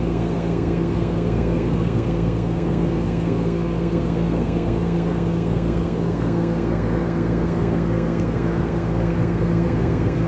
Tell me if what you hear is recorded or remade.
remade